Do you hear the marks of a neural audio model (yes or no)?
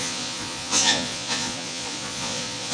yes